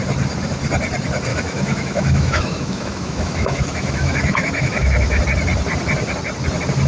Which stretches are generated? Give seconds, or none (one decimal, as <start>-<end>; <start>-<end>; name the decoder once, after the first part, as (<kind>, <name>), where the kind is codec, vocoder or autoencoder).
1.3-5.2 (autoencoder, DAC-VAE)